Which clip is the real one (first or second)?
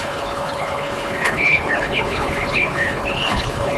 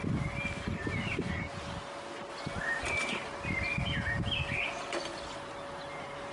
second